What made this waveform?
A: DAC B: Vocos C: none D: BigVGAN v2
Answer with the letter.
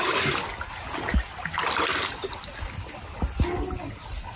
C